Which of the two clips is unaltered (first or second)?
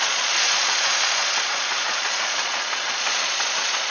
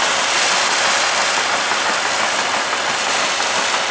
second